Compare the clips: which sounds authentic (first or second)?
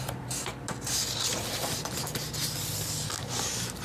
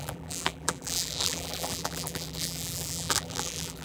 first